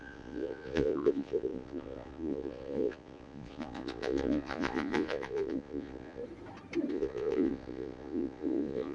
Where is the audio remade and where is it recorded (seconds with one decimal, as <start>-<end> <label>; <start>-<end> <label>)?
0.0-6.2 remade; 6.2-6.9 recorded; 6.9-8.9 remade